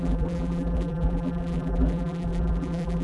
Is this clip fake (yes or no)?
yes